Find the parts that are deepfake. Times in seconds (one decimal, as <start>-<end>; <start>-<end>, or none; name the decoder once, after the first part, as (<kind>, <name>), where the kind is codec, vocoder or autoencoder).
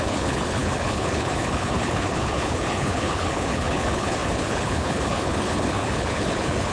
0.0-6.7 (codec, HILCodec)